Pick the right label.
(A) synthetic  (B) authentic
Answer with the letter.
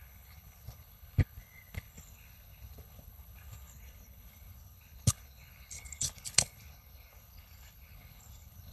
A